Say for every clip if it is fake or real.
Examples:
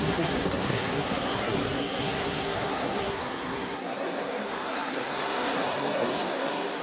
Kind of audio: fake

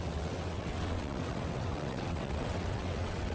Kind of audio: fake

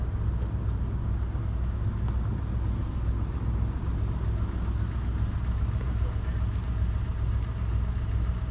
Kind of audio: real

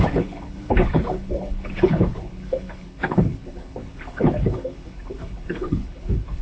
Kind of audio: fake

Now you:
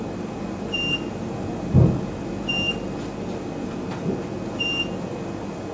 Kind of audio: real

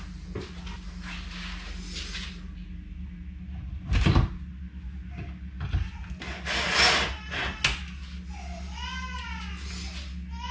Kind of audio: real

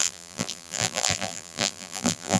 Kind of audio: fake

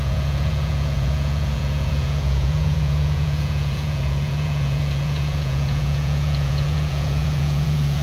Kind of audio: fake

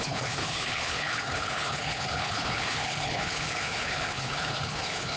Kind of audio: fake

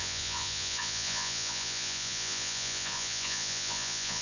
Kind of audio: fake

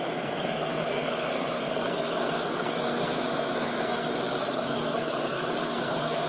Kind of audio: fake